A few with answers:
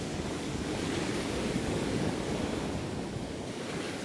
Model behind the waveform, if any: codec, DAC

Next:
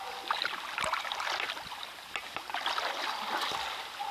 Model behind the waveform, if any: none